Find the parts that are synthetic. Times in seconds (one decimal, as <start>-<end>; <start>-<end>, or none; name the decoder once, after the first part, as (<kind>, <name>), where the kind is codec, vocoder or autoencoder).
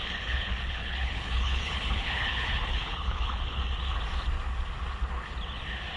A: 0.0-3.6 (codec, HILCodec)